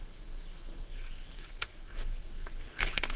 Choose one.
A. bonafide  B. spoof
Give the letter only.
B